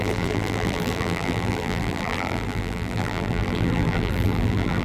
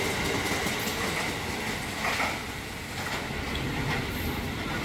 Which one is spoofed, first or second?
first